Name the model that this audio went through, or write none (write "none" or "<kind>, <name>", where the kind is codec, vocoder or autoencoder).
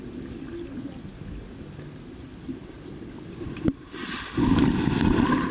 none